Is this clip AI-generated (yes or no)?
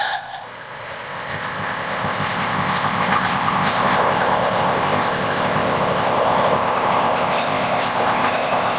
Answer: yes